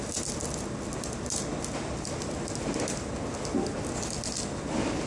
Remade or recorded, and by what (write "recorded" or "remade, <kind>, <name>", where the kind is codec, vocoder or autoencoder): recorded